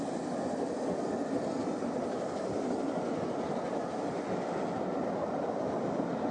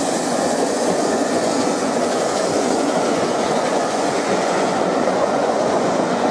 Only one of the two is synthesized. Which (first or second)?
second